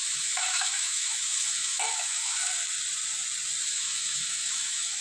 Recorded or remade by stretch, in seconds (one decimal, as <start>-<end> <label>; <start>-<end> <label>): 0.0-2.6 remade; 2.6-3.7 recorded; 3.7-5.0 remade